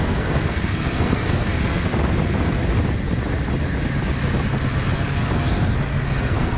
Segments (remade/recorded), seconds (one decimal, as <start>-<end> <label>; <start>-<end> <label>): 0.0-1.5 remade; 1.5-5.5 recorded; 5.5-6.6 remade